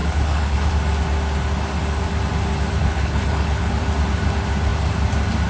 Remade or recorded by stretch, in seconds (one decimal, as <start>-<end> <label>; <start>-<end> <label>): 0.0-0.7 remade; 0.7-2.8 recorded; 2.8-3.7 remade; 3.7-5.5 recorded